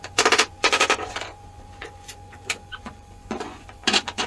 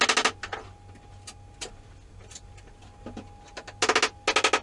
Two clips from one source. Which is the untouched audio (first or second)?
second